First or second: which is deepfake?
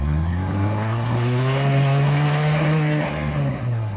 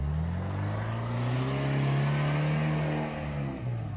first